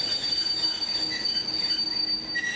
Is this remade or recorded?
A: recorded